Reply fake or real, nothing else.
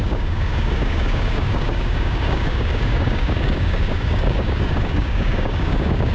fake